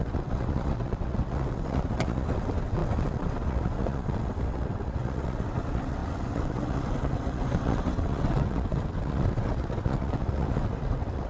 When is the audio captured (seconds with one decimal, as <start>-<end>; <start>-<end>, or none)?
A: none